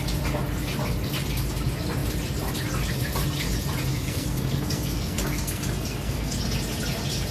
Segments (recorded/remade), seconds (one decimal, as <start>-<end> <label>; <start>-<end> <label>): 0.0-3.9 recorded; 3.9-6.4 remade; 6.4-7.3 recorded